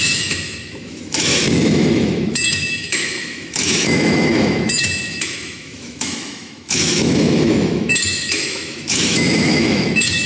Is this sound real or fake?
fake